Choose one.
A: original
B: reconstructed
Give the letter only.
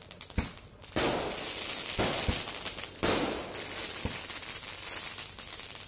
A